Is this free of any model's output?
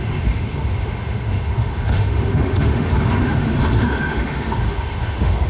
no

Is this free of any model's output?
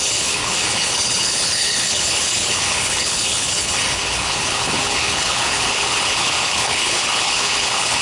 no